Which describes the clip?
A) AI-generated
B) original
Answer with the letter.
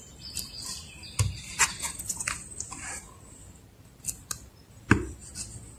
B